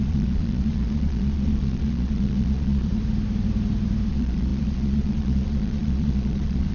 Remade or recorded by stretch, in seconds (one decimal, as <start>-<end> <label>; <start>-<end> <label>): 0.0-2.9 remade; 2.9-4.1 recorded; 4.1-6.7 remade